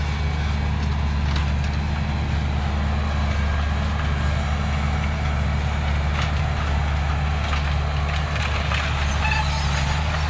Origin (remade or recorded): recorded